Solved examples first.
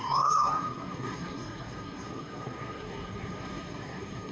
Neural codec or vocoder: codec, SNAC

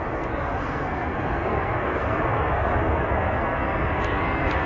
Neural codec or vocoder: codec, SNAC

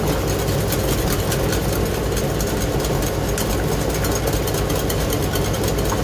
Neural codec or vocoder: none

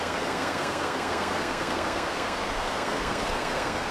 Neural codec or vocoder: codec, SNAC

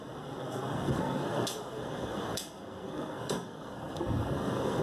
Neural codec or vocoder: codec, SNAC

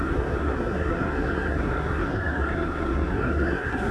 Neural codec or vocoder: codec, SNAC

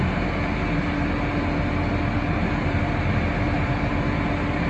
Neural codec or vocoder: none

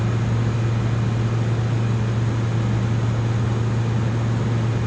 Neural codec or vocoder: none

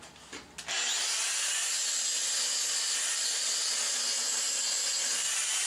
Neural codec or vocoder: none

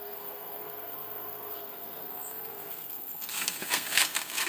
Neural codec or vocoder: codec, SNAC